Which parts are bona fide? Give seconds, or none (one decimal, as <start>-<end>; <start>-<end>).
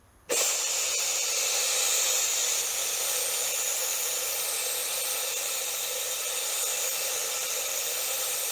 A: 0.0-2.8; 3.4-3.9; 4.6-8.5